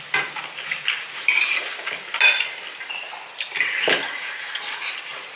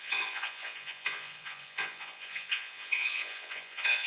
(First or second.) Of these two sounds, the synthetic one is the second